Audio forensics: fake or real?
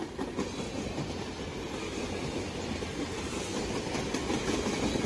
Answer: real